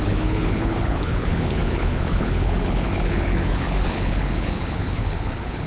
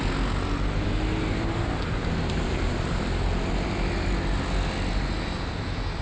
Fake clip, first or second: first